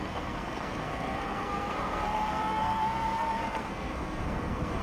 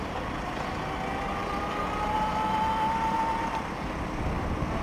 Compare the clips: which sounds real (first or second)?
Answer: second